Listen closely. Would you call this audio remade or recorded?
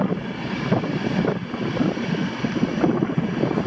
recorded